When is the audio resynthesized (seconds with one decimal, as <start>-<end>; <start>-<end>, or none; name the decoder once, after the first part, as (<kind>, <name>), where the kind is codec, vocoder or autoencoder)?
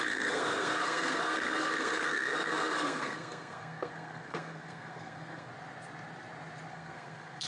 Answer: 0.0-5.5 (codec, SNAC); 6.7-7.5